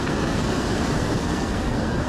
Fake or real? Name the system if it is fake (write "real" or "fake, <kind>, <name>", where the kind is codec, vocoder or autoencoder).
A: fake, codec, SNAC